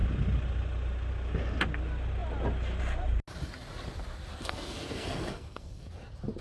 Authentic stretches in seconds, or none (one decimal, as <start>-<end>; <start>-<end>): 0.0-4.3; 5.9-6.4